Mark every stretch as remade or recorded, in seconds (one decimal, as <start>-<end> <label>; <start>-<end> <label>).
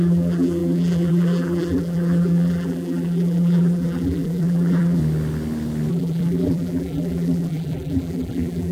0.0-5.0 remade; 5.0-5.9 recorded; 5.9-8.7 remade